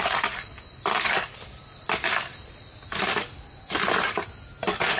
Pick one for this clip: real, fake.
real